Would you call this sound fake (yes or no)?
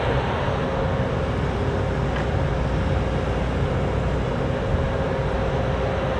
no